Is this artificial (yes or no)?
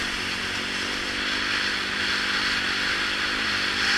no